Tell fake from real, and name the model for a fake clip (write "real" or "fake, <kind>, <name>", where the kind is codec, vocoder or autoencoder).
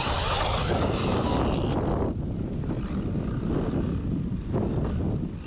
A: real